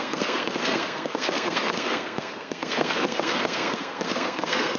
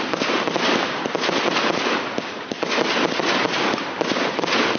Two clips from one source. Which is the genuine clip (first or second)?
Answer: second